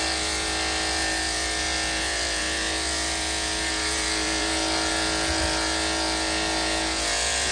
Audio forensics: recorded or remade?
remade